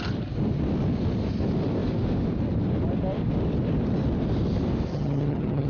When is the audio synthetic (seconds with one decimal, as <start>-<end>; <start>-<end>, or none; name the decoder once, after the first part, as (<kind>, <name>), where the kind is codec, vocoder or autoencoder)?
4.9-5.7 (vocoder, HiFi-GAN)